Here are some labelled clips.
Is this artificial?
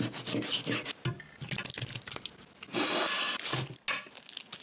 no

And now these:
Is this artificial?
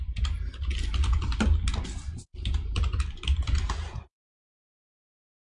no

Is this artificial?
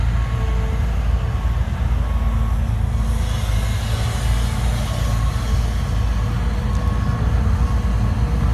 no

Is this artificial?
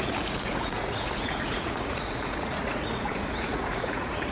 yes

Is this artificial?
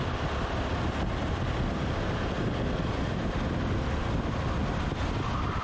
no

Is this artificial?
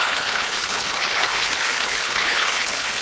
yes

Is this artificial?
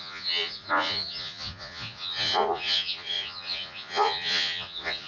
yes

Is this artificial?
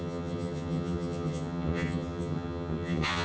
yes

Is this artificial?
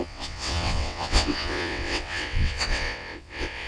yes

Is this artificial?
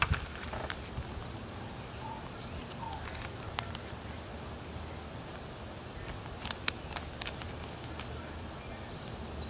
no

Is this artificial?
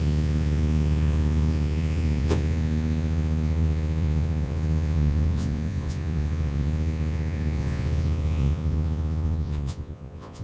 yes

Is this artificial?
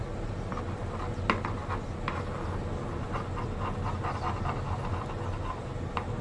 no